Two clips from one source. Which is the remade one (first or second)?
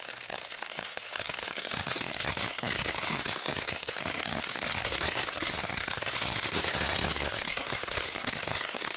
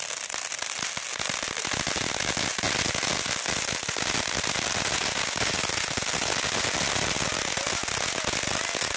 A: first